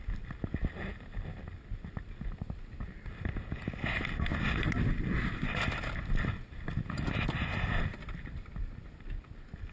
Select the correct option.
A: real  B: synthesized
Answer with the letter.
A